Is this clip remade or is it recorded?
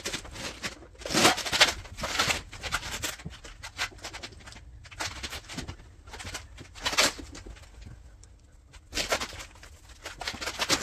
recorded